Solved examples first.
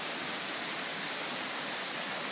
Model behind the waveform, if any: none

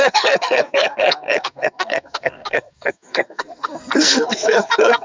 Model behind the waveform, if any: codec, SNAC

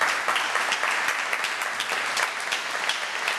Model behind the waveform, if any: none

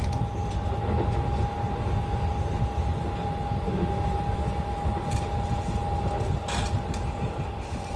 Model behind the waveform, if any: none